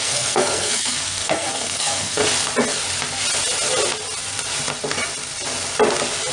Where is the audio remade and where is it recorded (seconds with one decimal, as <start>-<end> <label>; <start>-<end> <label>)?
0.0-2.2 remade; 2.2-6.3 recorded